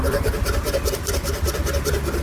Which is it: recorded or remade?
remade